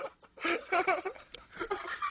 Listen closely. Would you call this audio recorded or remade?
recorded